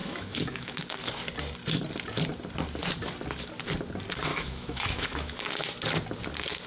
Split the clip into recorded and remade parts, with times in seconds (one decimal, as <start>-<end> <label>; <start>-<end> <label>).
0.0-0.8 remade; 0.8-4.3 recorded; 4.3-5.5 remade; 5.5-6.7 recorded